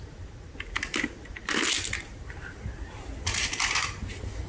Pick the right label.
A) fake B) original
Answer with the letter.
B